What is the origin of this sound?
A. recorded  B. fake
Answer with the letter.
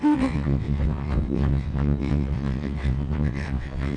B